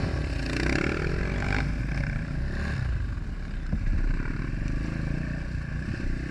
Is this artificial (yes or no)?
no